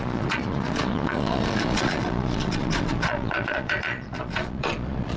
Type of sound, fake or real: fake